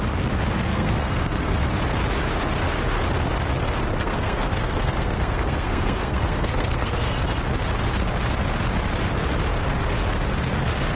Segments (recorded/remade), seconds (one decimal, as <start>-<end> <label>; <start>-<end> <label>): 0.0-0.7 recorded; 0.7-1.7 remade; 1.7-4.0 recorded; 4.0-7.2 remade; 7.2-10.9 recorded